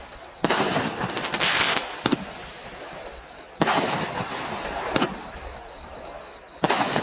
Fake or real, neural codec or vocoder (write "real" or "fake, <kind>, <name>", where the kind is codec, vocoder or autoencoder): fake, vocoder, BigVGAN v2